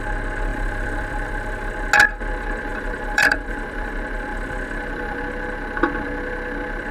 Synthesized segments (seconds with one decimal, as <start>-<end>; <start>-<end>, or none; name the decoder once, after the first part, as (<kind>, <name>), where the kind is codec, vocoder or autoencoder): 0.5-1.7 (vocoder, BigVGAN v2); 2.7-3.9; 4.3-5.2